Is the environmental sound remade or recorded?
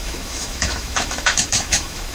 remade